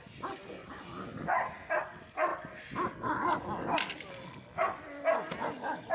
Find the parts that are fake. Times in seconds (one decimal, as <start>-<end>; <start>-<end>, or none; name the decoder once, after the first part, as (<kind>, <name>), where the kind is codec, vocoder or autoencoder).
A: none